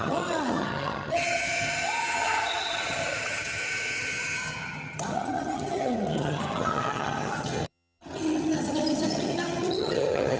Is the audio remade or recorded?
remade